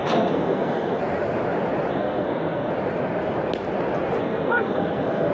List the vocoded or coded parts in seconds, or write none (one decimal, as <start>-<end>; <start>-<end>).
0.0-1.0; 1.9-2.7; 4.2-5.3